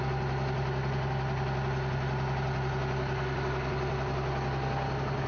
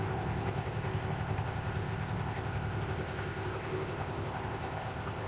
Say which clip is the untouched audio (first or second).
first